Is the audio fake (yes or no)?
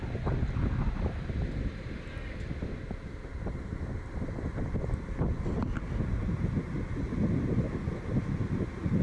no